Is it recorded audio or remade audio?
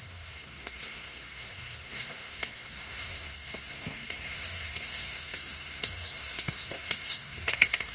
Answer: remade